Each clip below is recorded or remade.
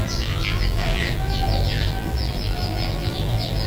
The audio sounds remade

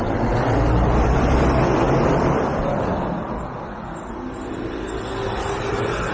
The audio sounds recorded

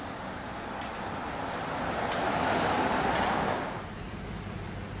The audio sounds recorded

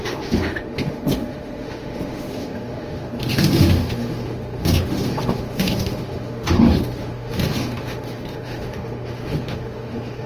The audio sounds remade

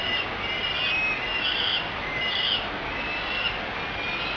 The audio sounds recorded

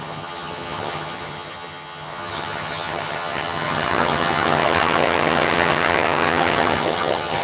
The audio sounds remade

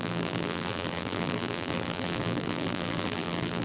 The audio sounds remade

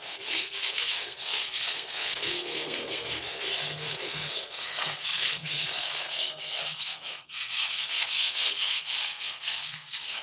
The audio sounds remade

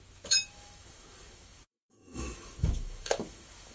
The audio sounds remade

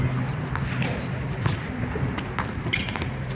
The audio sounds recorded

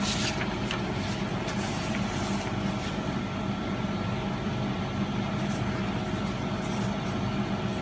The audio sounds recorded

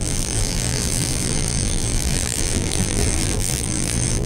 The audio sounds remade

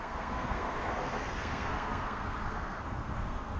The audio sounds remade